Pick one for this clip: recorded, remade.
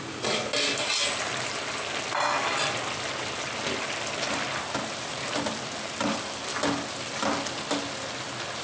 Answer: recorded